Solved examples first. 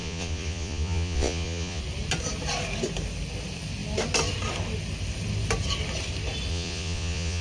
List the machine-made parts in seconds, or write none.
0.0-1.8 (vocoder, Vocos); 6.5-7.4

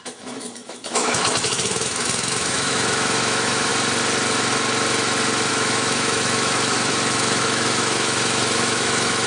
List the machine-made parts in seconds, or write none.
0.0-3.7 (autoencoder, DAC-VAE); 5.5-9.3

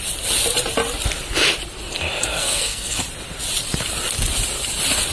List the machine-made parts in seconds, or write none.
2.3-3.0 (codec, SNAC)

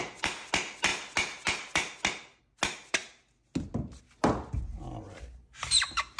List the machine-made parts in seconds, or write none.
none

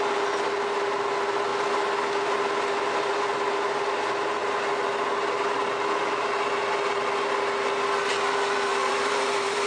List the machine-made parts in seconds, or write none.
8.7-9.7 (vocoder, BigVGAN v2)

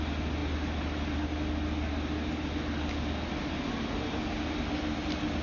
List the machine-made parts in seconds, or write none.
none